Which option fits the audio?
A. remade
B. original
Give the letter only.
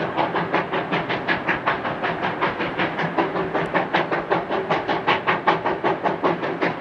B